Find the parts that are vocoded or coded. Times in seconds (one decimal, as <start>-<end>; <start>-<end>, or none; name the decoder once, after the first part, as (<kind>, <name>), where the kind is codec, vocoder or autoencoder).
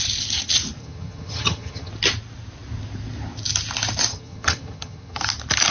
0.8-1.9 (vocoder, HiFi-GAN); 4.1-5.2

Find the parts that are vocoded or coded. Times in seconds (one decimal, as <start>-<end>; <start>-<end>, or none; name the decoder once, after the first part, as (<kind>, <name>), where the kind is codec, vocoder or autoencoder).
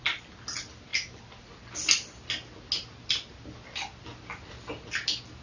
none